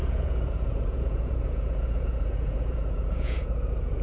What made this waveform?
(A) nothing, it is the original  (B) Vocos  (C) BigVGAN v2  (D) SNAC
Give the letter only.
B